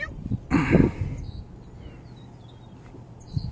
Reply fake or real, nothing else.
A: real